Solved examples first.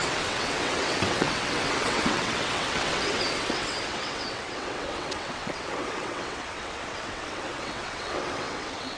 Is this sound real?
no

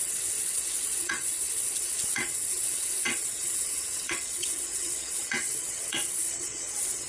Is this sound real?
no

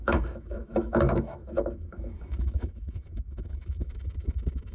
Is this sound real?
no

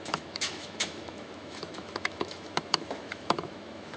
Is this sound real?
no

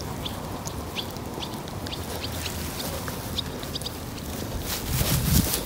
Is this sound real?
yes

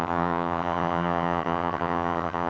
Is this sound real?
no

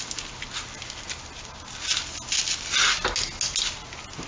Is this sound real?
yes